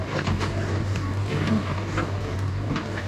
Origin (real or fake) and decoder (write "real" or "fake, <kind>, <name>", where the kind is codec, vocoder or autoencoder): fake, codec, DAC